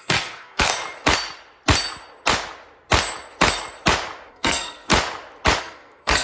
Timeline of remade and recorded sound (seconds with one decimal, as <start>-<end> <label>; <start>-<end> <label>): 0.0-0.7 remade; 0.7-4.3 recorded; 4.3-4.9 remade; 4.9-5.6 recorded; 5.6-6.2 remade